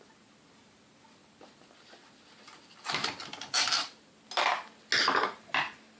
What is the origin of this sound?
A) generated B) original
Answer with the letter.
B